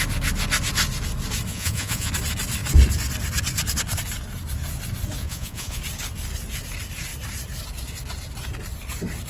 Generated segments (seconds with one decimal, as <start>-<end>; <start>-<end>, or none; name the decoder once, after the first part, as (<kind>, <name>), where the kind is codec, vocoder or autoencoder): 1.5-2.1 (vocoder, Vocos); 5.2-5.8

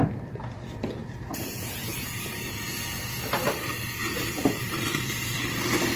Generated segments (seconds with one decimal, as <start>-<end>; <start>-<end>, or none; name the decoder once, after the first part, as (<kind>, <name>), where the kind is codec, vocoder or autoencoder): 1.0-3.0 (vocoder, Vocos)

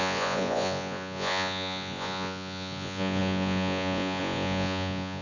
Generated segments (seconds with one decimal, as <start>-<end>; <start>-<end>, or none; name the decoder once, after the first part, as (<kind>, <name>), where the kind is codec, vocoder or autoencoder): 0.0-5.2 (vocoder, Vocos)

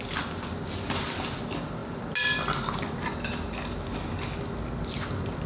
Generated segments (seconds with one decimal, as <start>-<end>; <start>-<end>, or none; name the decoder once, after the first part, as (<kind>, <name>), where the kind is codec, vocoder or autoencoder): none

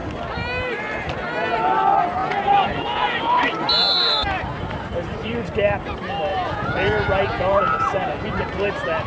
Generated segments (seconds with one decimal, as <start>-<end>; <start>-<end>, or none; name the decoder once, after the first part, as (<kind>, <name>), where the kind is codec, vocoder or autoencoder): 2.2-3.2 (vocoder, Vocos); 6.3-7.6

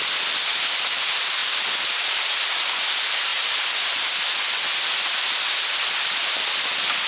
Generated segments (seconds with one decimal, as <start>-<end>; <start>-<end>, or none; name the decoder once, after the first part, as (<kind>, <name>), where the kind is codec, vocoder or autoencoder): none

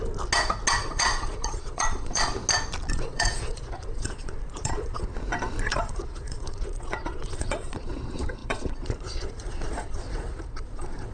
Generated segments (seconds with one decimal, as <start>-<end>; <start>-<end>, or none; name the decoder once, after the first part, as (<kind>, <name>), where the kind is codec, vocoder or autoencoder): 0.8-2.3 (vocoder, Vocos); 2.9-5.1; 5.7-11.1

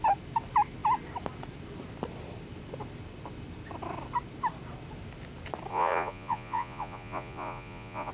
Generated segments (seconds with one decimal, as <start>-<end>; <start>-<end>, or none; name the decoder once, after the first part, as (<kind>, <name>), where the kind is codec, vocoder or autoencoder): 5.7-8.1 (vocoder, Vocos)